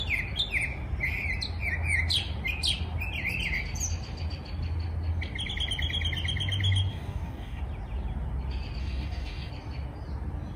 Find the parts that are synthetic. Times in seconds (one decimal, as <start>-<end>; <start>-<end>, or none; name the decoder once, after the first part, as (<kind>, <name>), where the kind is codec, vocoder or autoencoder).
6.9-7.6 (codec, DAC); 8.8-9.5